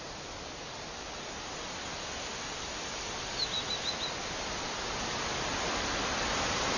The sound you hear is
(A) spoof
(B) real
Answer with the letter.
B